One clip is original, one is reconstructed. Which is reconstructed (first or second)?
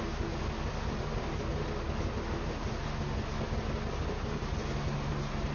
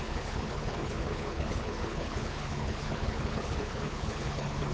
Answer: second